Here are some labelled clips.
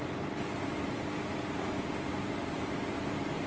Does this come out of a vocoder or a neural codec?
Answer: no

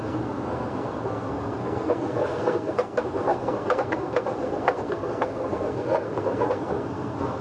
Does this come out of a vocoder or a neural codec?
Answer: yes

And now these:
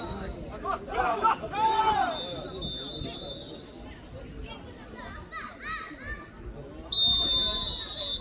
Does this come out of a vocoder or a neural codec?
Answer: no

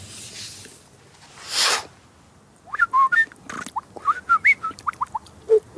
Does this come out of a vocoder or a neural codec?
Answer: no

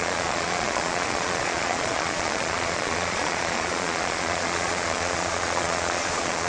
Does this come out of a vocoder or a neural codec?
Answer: yes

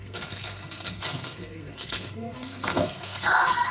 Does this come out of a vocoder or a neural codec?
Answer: yes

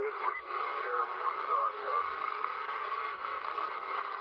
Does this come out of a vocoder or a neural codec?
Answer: yes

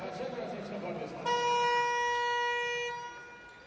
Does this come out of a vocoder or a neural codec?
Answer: no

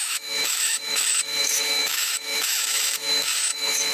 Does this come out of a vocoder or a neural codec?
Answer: yes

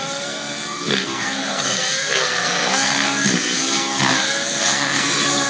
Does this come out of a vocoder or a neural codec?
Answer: yes